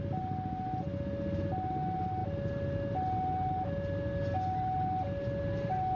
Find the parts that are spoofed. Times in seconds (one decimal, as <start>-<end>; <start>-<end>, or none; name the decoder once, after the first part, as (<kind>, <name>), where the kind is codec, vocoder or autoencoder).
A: none